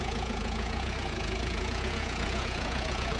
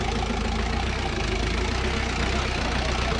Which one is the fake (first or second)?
first